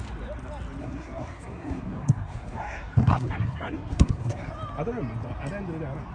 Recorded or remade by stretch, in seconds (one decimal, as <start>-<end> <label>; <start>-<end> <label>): 0.0-0.8 recorded; 0.8-4.5 remade; 4.5-6.1 recorded